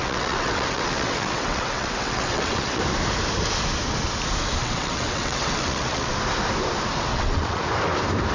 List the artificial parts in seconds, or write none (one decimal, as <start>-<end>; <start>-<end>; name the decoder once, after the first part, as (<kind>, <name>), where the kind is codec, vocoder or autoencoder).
0.0-2.8 (vocoder, WaveNeXt); 4.6-6.1; 7.1-7.6